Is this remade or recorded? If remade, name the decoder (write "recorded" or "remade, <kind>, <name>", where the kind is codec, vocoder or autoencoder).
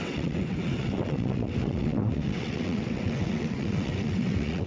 remade, vocoder, WaveNeXt